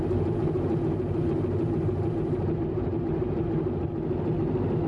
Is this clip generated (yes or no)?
no